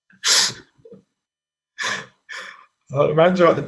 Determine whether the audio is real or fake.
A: fake